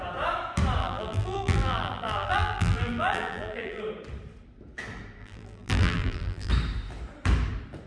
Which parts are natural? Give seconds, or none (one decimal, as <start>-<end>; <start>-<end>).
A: 0.0-0.8; 3.8-5.2; 6.5-7.9